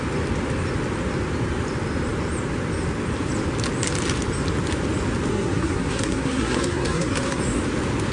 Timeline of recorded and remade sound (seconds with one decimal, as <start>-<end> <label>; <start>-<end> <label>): 0.0-5.3 recorded; 5.3-7.4 remade; 7.4-8.1 recorded